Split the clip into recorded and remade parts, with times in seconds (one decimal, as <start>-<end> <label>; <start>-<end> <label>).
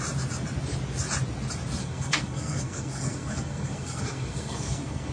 0.0-1.8 recorded; 1.8-5.1 remade